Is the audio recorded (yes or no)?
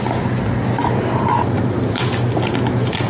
yes